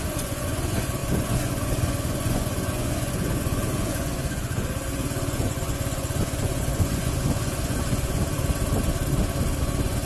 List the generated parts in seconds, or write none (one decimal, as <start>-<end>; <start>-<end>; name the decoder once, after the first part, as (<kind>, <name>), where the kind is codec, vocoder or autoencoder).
0.0-8.2 (vocoder, Vocos); 9.6-10.1